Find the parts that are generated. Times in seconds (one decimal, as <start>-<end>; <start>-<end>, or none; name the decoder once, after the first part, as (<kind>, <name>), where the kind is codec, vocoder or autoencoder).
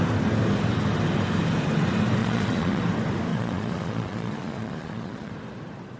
2.2-2.8 (vocoder, Vocos); 3.3-5.3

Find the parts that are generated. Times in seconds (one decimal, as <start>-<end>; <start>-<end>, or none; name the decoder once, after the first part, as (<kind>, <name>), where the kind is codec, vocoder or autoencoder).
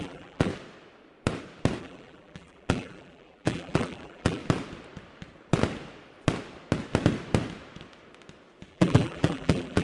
0.0-0.5 (vocoder, BigVGAN v2); 1.8-4.4; 8.7-9.8